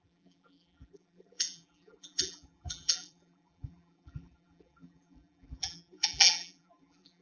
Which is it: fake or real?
fake